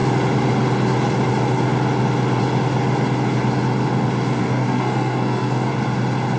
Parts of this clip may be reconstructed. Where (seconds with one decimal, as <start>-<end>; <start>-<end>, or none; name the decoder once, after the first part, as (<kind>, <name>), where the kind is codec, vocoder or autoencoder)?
4.4-5.7 (codec, SNAC)